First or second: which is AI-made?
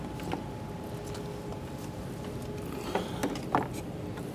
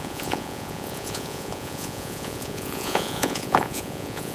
second